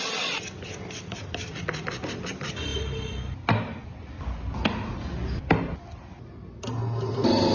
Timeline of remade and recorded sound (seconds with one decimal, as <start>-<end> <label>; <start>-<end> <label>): 0.0-2.7 remade; 2.7-7.1 recorded; 7.1-7.5 remade